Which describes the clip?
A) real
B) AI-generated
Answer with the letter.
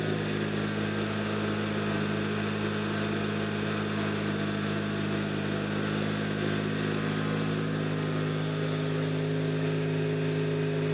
A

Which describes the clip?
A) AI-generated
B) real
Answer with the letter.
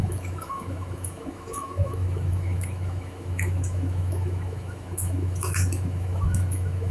A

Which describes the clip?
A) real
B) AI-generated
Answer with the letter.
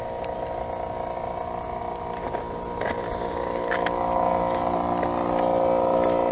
A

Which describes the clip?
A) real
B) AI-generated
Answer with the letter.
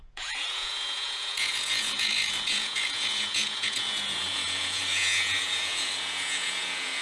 B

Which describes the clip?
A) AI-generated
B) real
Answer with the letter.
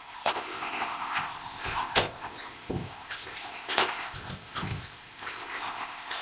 A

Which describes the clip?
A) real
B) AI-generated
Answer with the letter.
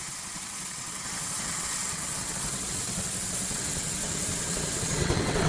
B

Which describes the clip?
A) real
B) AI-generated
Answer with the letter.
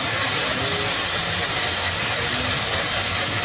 A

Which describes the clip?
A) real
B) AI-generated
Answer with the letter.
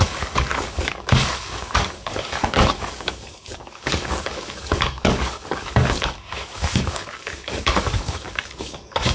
B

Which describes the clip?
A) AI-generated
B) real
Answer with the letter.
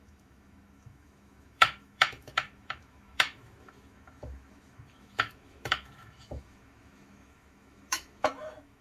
A